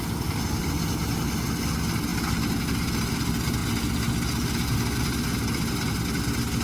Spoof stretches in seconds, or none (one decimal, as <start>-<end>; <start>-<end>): none